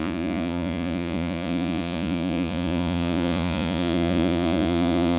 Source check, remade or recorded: remade